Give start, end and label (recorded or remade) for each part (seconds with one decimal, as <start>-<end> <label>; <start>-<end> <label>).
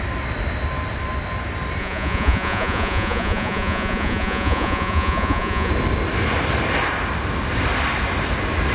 0.0-1.8 recorded; 1.8-5.7 remade; 5.7-8.7 recorded